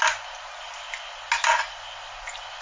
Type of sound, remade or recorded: recorded